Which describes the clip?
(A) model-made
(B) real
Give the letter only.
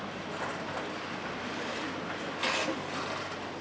B